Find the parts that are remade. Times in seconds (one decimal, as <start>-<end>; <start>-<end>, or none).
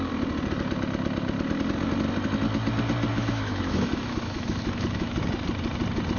3.1-5.2